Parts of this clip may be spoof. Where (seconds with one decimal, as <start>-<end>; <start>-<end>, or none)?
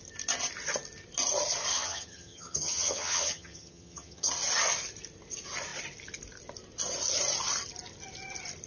1.7-4.3